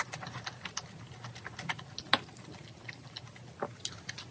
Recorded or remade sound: recorded